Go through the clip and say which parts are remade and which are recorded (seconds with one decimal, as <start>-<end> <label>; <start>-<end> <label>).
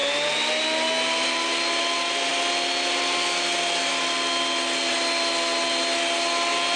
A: 0.0-6.8 recorded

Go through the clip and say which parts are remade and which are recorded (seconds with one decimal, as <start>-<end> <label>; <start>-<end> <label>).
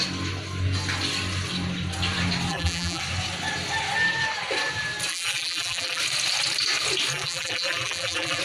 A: 0.0-2.5 recorded; 2.5-3.0 remade; 3.0-5.1 recorded; 5.1-6.0 remade; 6.0-7.1 recorded; 7.1-8.4 remade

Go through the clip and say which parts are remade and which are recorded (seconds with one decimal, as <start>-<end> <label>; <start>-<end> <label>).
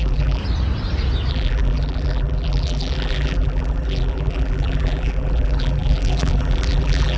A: 0.0-0.4 remade; 0.4-1.3 recorded; 1.3-7.2 remade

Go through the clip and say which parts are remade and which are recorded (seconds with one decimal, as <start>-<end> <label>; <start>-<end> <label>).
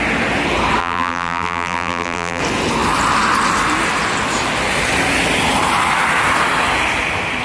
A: 0.0-0.8 recorded; 0.8-2.4 remade; 2.4-7.4 recorded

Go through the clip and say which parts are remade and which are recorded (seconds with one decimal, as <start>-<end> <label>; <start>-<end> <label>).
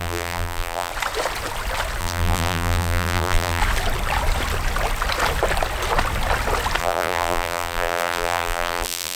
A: 0.0-0.9 remade; 0.9-2.0 recorded; 2.0-3.6 remade; 3.6-6.8 recorded; 6.8-9.2 remade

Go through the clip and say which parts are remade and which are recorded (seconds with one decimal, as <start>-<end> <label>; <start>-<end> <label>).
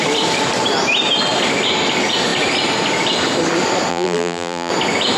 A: 0.0-3.9 recorded; 3.9-4.7 remade; 4.7-5.2 recorded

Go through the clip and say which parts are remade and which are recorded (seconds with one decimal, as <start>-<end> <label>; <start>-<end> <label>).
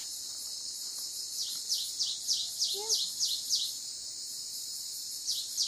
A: 0.0-2.0 recorded; 2.0-2.4 remade; 2.4-5.1 recorded; 5.1-5.7 remade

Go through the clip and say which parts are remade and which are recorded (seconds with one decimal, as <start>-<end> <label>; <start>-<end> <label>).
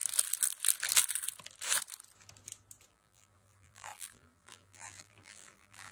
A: 0.0-2.9 recorded; 2.9-5.9 remade